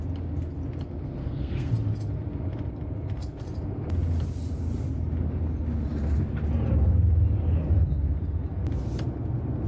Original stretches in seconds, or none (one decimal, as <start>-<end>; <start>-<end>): 0.0-1.2; 1.7-9.7